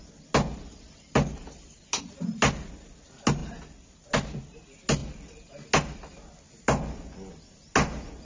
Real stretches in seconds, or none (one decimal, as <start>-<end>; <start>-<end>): 0.0-8.2